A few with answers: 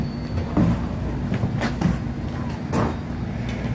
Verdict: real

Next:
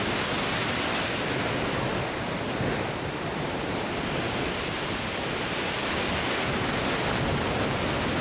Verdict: real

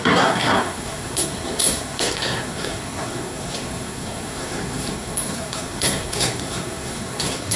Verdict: fake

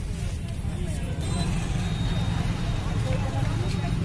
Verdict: real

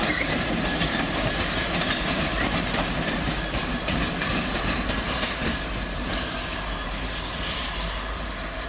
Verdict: fake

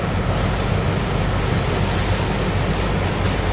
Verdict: real